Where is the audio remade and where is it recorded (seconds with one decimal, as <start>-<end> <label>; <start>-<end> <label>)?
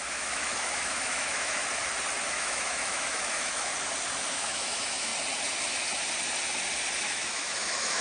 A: 0.0-1.6 remade; 1.6-2.3 recorded; 2.3-3.7 remade; 3.7-4.3 recorded; 4.3-5.1 remade; 5.1-7.0 recorded; 7.0-8.0 remade